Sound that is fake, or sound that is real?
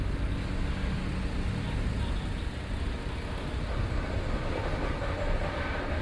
real